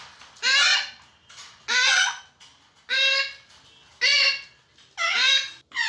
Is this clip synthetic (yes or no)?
no